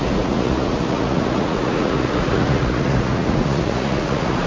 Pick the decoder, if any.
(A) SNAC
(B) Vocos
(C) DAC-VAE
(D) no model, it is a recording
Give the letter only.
B